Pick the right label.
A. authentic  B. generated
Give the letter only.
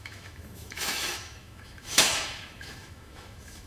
B